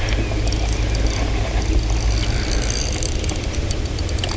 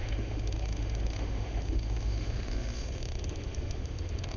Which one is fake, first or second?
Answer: second